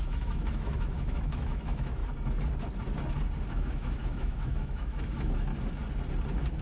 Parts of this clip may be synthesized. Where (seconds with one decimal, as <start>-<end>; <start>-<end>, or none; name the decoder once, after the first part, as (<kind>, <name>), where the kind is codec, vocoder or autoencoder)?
0.0-2.0 (autoencoder, DAC-VAE); 3.5-5.5